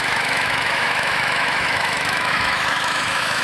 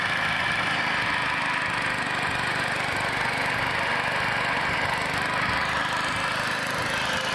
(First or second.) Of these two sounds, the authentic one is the second